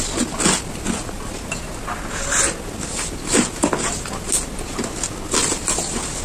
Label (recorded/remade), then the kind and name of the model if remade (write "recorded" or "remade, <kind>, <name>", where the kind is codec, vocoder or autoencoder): recorded